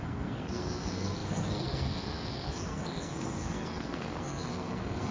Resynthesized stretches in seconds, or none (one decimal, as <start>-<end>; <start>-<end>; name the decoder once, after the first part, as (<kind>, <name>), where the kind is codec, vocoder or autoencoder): 0.0-5.1 (codec, SNAC)